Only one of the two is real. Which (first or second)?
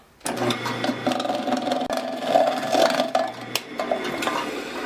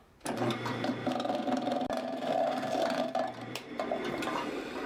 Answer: first